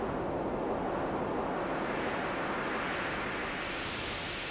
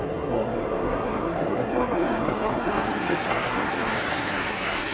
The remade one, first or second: second